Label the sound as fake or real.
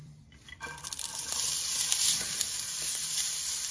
fake